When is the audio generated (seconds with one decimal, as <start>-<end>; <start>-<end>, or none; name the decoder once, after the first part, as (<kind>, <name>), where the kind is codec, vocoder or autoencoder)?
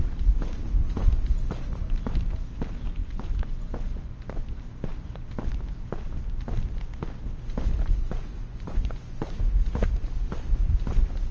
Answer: 3.0-4.6 (vocoder, Vocos); 8.3-9.3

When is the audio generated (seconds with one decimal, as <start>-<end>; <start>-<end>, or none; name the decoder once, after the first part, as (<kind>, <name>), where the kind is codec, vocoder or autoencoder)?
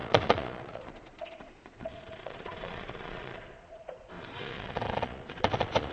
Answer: 0.0-5.9 (vocoder, Vocos)